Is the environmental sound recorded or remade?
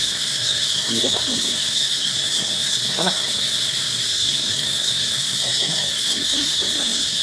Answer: remade